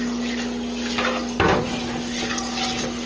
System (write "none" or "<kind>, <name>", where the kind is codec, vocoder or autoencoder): none